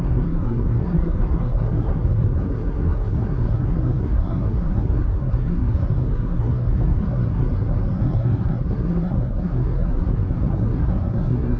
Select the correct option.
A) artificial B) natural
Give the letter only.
A